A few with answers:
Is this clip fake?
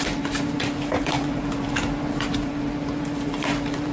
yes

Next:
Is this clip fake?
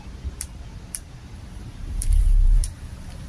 yes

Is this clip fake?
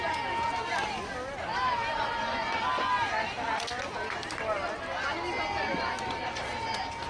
no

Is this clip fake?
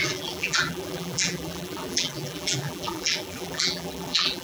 yes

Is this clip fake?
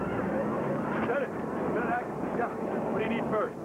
yes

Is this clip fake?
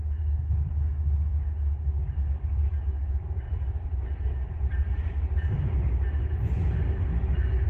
no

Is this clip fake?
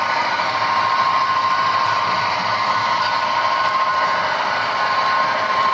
yes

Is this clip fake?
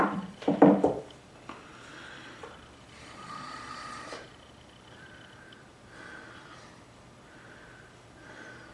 yes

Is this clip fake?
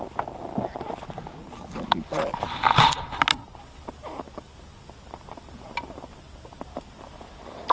no